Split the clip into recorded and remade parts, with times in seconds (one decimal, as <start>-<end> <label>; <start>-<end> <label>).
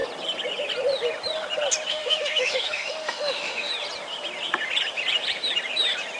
0.0-1.9 recorded; 1.9-3.7 remade; 3.7-6.2 recorded